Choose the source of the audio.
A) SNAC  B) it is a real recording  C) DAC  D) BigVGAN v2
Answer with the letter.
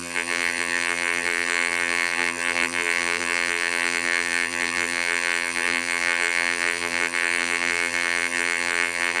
D